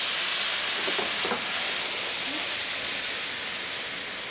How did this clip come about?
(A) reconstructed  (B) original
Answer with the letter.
B